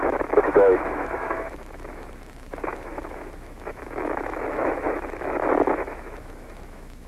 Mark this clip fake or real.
fake